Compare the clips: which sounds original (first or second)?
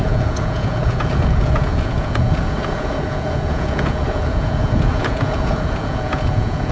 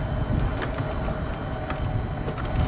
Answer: second